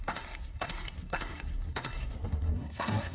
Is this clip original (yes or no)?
no